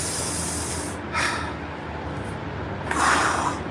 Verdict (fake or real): real